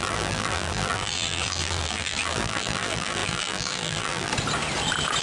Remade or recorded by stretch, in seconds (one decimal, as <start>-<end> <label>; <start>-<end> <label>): 0.0-4.3 remade; 4.3-5.2 recorded